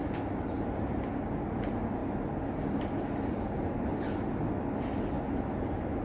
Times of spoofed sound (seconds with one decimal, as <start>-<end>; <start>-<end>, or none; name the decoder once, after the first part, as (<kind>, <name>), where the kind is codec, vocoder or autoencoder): none